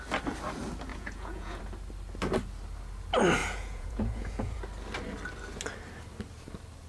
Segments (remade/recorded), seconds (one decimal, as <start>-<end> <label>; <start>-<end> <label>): 0.0-0.9 recorded; 0.9-1.6 remade; 1.6-3.4 recorded; 3.4-4.6 remade; 4.6-6.9 recorded